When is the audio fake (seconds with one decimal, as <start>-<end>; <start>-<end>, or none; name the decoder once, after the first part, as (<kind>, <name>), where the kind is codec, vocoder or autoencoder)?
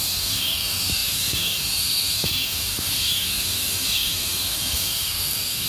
0.0-5.7 (codec, DAC)